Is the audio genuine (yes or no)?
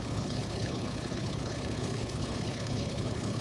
no